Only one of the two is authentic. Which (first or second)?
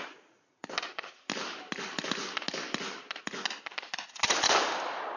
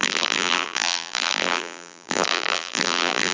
first